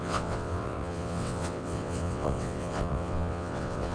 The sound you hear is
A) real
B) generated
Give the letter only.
B